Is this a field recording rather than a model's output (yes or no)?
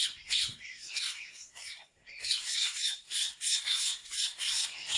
no